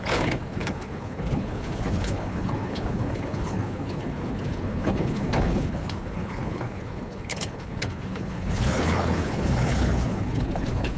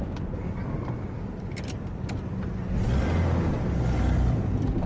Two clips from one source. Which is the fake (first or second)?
first